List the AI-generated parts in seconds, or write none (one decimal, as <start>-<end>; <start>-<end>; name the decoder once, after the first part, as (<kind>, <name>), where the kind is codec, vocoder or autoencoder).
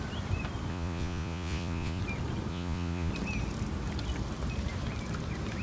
0.7-2.0 (vocoder, Vocos); 2.5-3.1